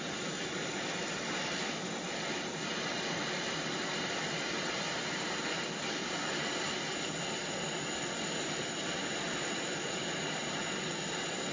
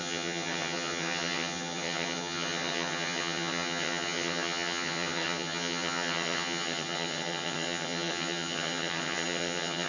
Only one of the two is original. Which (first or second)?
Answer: first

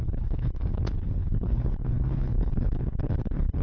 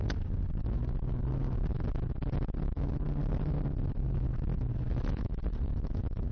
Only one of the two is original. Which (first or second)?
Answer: second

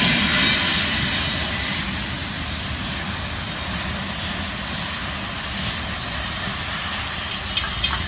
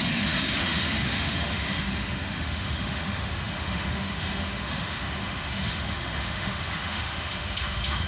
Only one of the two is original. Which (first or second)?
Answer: first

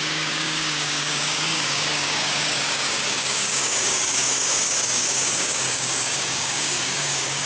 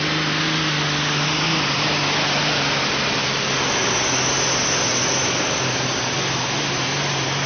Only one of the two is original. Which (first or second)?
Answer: second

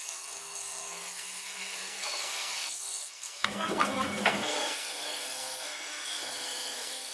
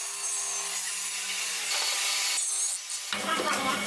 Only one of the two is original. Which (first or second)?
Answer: second